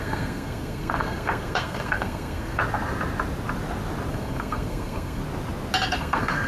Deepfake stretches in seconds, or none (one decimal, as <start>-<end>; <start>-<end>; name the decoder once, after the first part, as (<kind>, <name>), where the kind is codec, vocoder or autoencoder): 0.0-2.6 (codec, SNAC); 4.1-5.2; 5.9-6.5